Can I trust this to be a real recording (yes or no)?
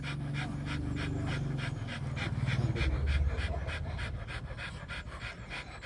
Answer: yes